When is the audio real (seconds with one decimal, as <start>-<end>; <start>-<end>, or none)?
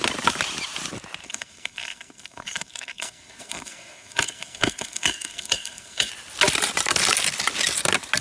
0.0-1.2; 6.1-8.2